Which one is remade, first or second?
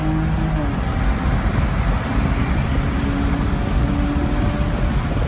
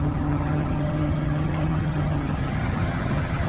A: second